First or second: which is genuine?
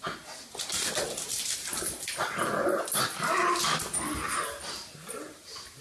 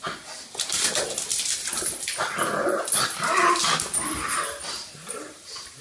first